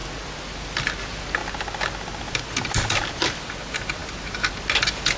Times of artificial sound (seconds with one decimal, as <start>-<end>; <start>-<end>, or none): none